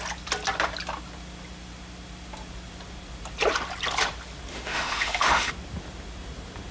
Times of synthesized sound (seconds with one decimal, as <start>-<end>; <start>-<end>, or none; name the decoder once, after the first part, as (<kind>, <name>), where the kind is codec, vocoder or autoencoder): 4.5-5.5 (autoencoder, DAC-VAE)